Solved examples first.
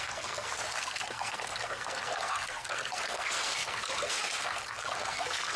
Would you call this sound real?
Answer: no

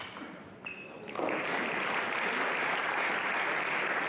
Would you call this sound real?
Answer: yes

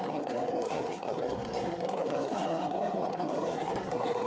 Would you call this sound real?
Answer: no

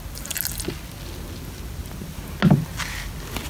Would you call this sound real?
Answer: yes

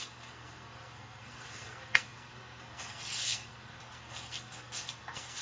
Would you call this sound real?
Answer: no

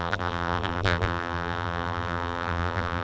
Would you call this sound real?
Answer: no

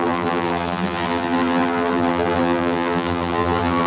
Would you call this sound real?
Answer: no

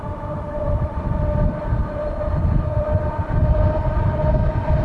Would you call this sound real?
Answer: no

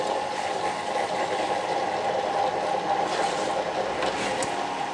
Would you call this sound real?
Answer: yes